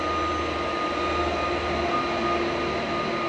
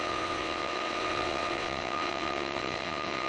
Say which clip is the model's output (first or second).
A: second